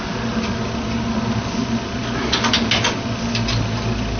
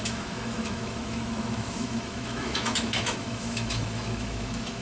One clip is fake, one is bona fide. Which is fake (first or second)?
second